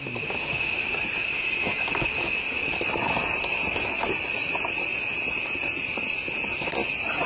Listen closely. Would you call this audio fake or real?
real